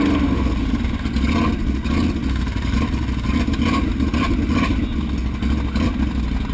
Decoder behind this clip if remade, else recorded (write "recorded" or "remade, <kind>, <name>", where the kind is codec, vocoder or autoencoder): recorded